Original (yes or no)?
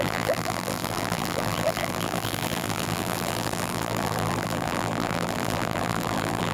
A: no